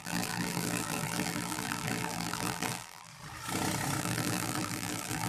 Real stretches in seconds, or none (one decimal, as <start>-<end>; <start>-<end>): 3.1-4.0